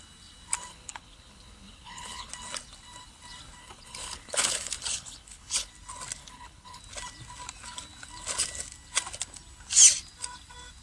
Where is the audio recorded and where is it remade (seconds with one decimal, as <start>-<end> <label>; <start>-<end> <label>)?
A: 0.0-0.7 recorded; 0.7-2.3 remade; 2.3-3.6 recorded; 3.6-5.7 remade; 5.7-6.2 recorded; 6.2-6.8 remade; 6.8-10.8 recorded